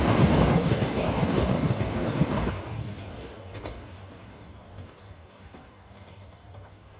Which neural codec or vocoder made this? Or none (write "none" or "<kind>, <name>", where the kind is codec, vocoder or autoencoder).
codec, DAC